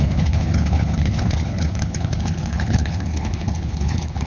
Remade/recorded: remade